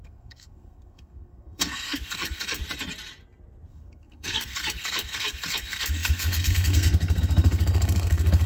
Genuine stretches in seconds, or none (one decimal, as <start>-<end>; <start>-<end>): 2.6-3.7